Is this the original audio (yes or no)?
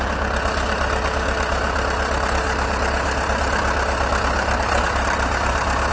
yes